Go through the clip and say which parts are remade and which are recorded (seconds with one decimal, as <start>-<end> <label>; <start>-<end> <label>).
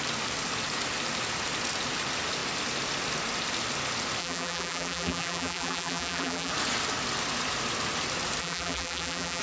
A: 0.0-4.2 recorded; 4.2-6.5 remade; 6.5-8.4 recorded; 8.4-9.4 remade